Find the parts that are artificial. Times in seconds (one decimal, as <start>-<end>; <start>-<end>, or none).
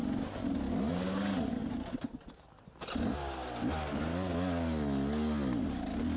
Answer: none